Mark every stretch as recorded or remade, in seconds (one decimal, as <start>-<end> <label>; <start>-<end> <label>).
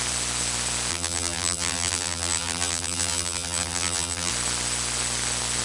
0.0-0.9 recorded; 0.9-4.3 remade; 4.3-5.6 recorded